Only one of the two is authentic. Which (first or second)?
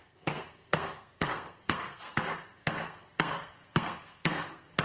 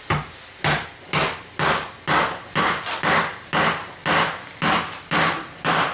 second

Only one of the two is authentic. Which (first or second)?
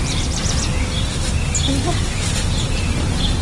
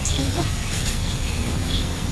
first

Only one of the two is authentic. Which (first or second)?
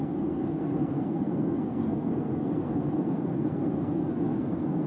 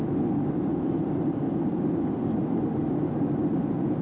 second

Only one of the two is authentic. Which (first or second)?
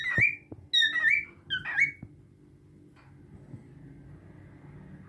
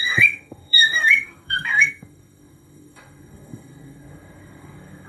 first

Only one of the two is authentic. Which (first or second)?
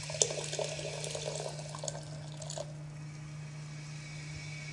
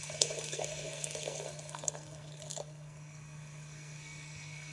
first